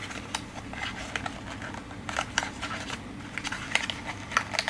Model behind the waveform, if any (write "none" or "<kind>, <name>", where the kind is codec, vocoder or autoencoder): none